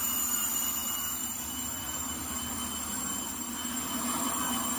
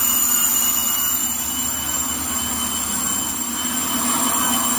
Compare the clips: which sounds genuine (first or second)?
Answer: second